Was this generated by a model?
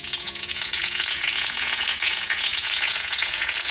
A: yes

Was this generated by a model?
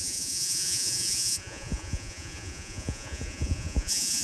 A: yes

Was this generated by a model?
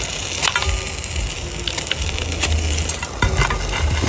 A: no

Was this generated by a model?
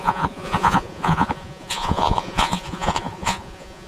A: yes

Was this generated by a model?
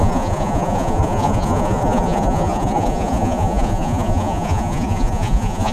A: yes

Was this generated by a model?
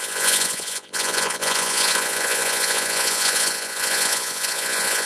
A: yes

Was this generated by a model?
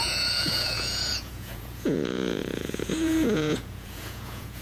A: yes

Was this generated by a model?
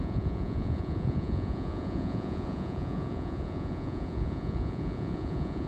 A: yes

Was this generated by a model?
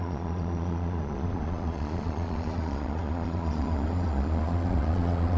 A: yes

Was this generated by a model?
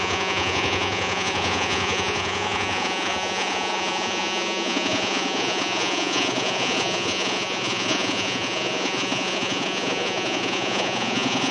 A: yes